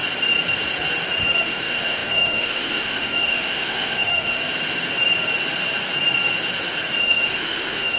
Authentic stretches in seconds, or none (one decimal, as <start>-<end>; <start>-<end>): 0.0-1.4; 4.4-7.0